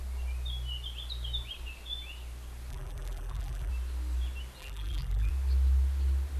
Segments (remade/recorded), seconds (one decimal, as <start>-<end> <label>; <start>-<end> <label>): 0.0-2.7 recorded; 2.7-3.7 remade; 3.7-4.6 recorded; 4.6-5.3 remade; 5.3-6.4 recorded